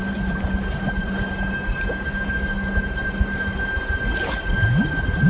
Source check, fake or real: real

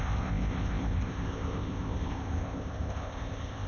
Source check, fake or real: fake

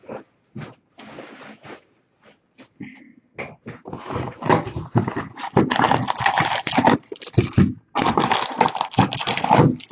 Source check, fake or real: real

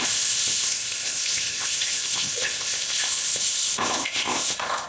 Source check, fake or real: fake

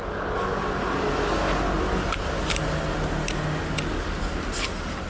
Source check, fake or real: real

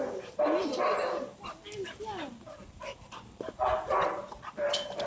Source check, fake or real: real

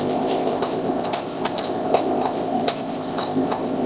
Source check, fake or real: fake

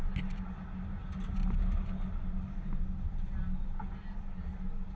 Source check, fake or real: real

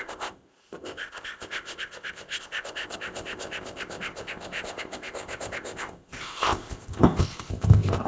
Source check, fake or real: fake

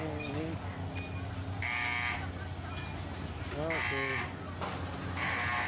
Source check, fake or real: real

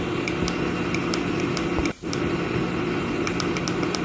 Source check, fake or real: real